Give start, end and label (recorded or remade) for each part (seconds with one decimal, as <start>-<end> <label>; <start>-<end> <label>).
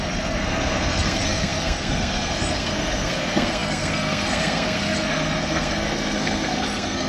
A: 0.0-7.1 remade